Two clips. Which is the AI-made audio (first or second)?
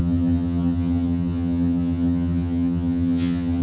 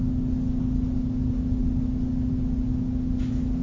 first